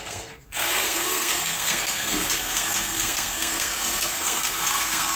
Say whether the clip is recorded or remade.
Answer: remade